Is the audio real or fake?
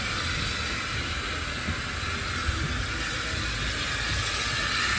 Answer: real